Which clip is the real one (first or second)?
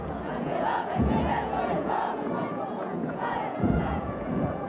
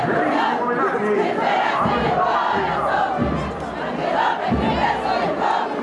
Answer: second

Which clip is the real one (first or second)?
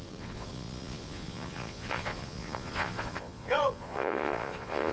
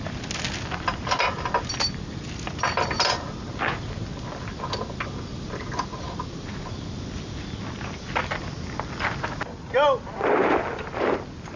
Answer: second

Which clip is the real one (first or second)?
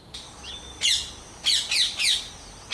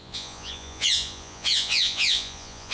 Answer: first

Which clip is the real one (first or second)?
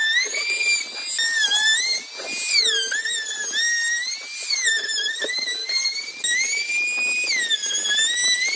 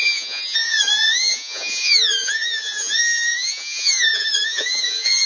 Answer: first